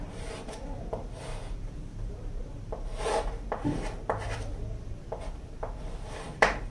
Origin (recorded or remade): remade